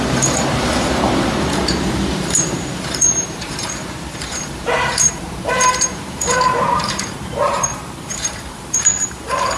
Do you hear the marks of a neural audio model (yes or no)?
yes